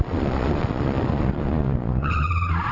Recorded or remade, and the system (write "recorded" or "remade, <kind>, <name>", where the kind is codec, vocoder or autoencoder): remade, vocoder, Vocos